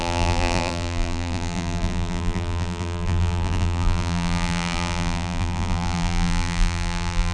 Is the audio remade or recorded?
remade